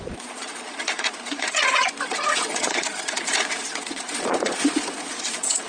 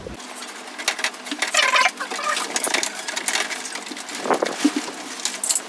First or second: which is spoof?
first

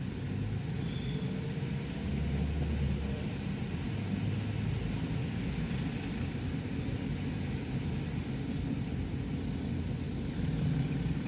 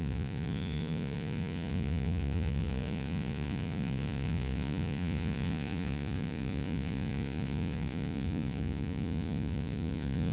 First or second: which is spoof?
second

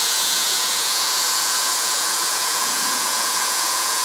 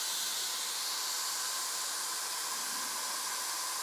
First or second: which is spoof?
first